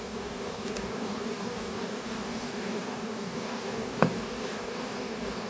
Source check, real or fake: fake